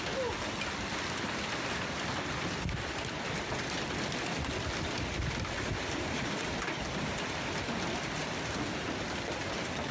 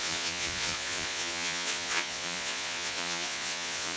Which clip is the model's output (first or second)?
second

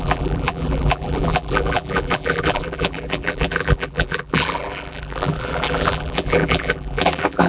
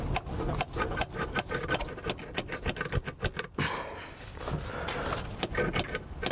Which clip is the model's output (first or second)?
first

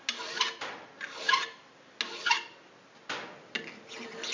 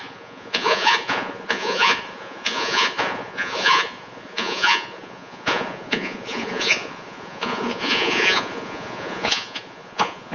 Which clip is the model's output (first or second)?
second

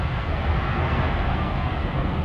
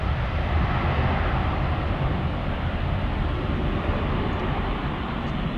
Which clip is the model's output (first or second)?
first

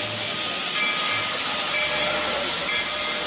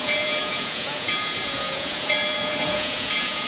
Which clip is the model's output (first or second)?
second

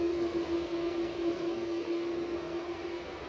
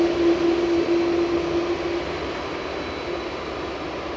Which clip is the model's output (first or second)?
first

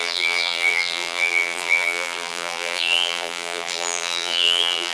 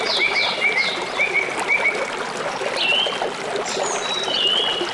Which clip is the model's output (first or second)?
first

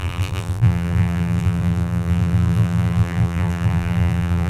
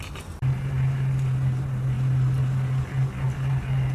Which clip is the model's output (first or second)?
first